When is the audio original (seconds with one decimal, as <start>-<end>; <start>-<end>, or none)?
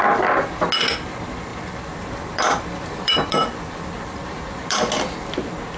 0.0-1.5; 4.9-5.8